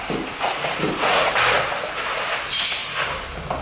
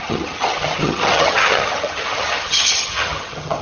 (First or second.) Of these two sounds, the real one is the first